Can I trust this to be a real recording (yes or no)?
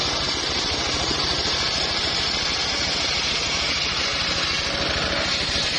yes